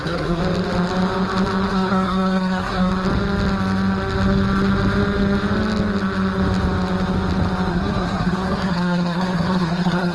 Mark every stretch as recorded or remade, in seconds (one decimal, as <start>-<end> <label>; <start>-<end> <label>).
0.0-0.4 remade; 0.4-1.7 recorded; 1.7-2.9 remade; 2.9-7.7 recorded; 7.7-10.1 remade